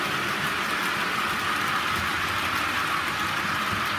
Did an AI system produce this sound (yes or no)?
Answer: no